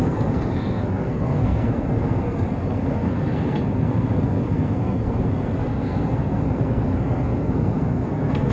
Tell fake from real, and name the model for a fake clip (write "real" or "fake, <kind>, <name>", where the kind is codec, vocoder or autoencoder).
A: fake, codec, SNAC